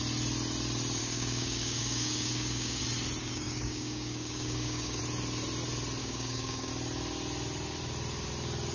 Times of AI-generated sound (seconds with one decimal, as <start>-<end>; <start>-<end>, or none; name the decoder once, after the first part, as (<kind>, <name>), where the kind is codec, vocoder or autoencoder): 1.0-2.8 (codec, DAC); 3.2-5.0; 6.0-6.7